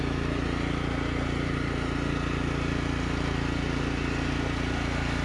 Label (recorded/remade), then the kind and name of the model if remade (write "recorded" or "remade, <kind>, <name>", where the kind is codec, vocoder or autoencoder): recorded